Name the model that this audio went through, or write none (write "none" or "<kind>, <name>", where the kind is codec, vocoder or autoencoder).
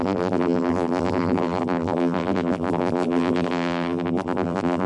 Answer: vocoder, BigVGAN v2